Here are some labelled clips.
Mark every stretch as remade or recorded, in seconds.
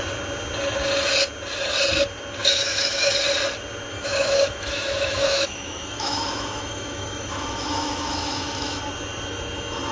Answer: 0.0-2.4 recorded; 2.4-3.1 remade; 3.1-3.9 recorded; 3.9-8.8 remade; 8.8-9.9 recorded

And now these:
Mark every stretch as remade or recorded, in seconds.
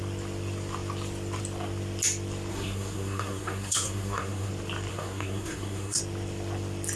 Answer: 0.0-2.5 recorded; 2.5-4.5 remade; 4.5-4.9 recorded; 4.9-6.0 remade; 6.0-7.0 recorded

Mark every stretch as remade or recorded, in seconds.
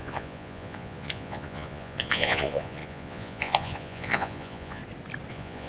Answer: 0.0-4.8 remade; 4.8-5.3 recorded; 5.3-5.7 remade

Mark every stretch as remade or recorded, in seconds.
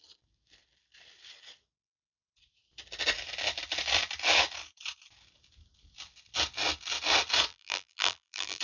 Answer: 0.0-7.5 recorded; 7.5-8.6 remade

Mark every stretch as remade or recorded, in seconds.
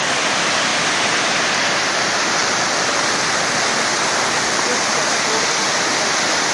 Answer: 0.0-0.7 recorded; 0.7-1.4 remade; 1.4-6.5 recorded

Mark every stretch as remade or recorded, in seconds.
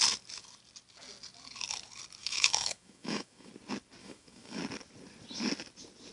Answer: 0.0-2.2 recorded; 2.2-3.5 remade; 3.5-4.0 recorded; 4.0-4.6 remade; 4.6-6.1 recorded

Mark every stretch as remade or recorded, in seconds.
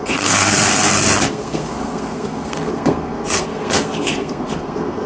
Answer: 0.0-0.7 remade; 0.7-1.3 recorded; 1.3-5.1 remade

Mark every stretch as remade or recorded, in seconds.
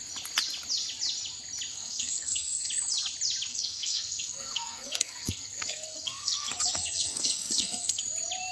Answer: 0.0-1.7 recorded; 1.7-2.7 remade; 2.7-3.5 recorded; 3.5-8.0 remade; 8.0-8.5 recorded